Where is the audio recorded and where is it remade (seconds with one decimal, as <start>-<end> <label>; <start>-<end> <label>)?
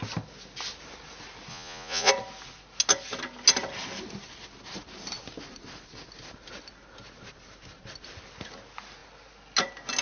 0.0-1.5 recorded; 1.5-2.1 remade; 2.1-10.0 recorded